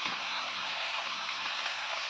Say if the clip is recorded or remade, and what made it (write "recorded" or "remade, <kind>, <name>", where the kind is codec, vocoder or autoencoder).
remade, codec, SNAC